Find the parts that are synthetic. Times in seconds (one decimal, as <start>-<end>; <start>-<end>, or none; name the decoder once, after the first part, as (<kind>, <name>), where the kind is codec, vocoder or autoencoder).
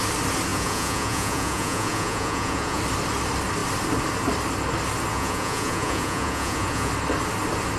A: 0.5-2.8 (vocoder, Vocos); 5.1-6.9